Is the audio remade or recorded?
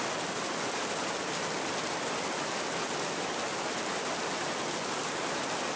recorded